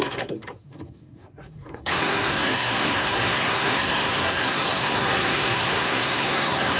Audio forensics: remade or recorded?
remade